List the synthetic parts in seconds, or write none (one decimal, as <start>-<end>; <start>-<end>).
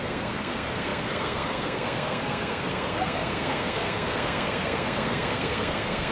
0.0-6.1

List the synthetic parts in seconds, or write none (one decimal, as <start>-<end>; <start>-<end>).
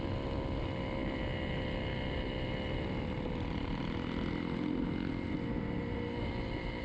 none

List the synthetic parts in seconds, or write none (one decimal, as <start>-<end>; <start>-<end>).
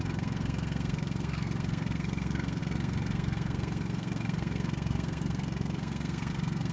0.0-6.7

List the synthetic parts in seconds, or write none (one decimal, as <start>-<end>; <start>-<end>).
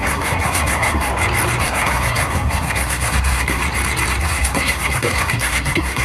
0.0-1.1; 1.6-3.6; 4.2-6.0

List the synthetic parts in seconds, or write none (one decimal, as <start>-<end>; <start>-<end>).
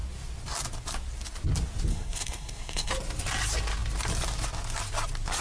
1.9-2.9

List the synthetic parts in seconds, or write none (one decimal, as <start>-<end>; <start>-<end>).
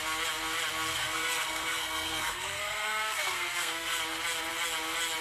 0.9-4.0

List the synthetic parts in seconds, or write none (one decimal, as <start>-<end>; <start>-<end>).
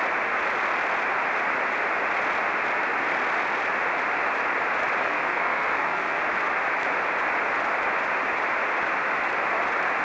5.0-6.2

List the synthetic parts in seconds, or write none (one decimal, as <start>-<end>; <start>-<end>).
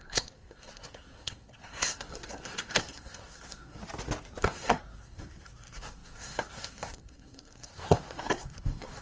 0.0-3.8; 4.4-9.0